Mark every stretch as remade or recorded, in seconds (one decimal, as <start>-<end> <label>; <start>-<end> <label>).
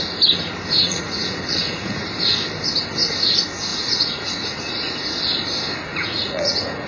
0.0-0.8 recorded; 0.8-2.1 remade; 2.1-3.7 recorded; 3.7-4.6 remade; 4.6-5.9 recorded; 5.9-6.9 remade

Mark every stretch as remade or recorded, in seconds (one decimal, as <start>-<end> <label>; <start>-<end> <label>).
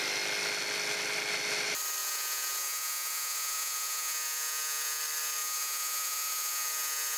0.0-2.0 recorded; 2.0-5.0 remade; 5.0-5.4 recorded; 5.4-7.2 remade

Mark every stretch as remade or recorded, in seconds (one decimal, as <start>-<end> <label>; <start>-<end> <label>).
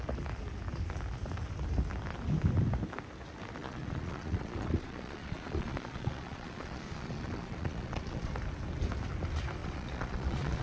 0.0-3.6 recorded; 3.6-8.3 remade; 8.3-9.6 recorded; 9.6-10.6 remade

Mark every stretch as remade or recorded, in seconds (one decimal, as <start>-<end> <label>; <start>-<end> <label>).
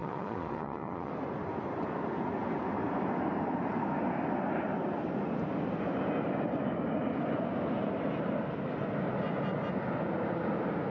0.0-1.1 remade; 1.1-10.9 recorded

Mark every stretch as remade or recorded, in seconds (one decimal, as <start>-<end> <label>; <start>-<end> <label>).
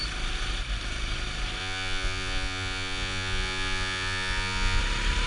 0.0-1.6 recorded; 1.6-4.8 remade; 4.8-5.3 recorded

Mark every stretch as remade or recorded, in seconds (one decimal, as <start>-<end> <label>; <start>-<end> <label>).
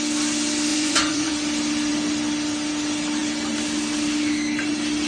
0.0-0.7 recorded; 0.7-1.3 remade; 1.3-5.1 recorded